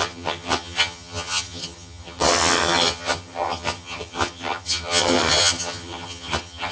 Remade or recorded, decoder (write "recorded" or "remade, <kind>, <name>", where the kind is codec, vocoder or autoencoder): remade, vocoder, HiFi-GAN